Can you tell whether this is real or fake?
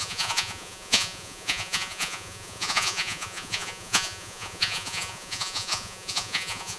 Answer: fake